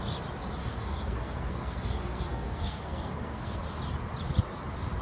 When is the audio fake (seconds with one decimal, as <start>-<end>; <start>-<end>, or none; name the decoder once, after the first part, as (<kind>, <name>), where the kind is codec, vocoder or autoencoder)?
0.6-3.6 (codec, SNAC)